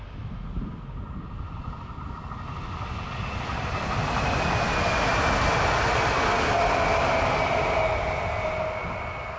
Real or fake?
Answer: real